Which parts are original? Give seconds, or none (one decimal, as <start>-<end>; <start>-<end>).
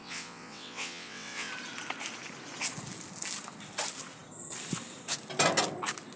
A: 1.5-6.2